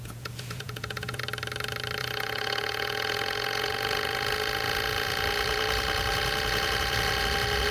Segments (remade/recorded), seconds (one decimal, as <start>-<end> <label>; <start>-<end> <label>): 0.0-1.2 remade; 1.2-2.0 recorded; 2.0-7.7 remade